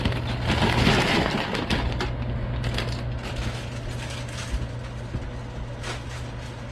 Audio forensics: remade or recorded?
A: recorded